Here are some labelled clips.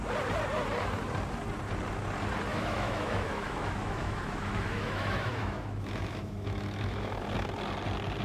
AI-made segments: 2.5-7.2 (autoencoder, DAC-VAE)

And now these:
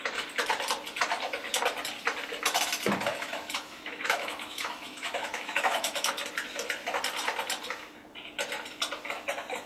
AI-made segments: 3.1-6.1 (autoencoder, DAC-VAE)

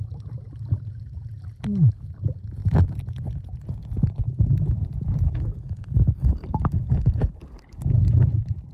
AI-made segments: none

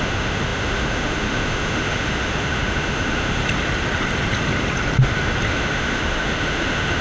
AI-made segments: 0.0-3.4 (autoencoder, DAC-VAE); 5.5-7.0

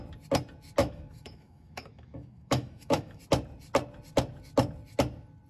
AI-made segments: 0.8-3.2 (autoencoder, DAC-VAE)

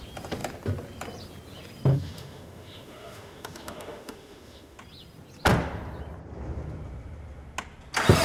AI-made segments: 1.9-4.8 (autoencoder, DAC-VAE)

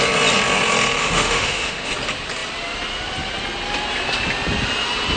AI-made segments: 1.0-1.9 (autoencoder, DAC-VAE)

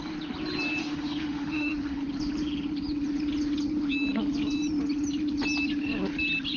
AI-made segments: 0.8-2.0 (autoencoder, DAC-VAE)